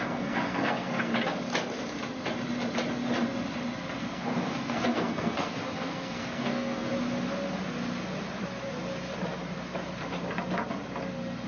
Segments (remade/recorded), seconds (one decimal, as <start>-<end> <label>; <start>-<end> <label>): 0.0-1.1 remade; 1.1-4.0 recorded; 4.0-6.9 remade; 6.9-11.5 recorded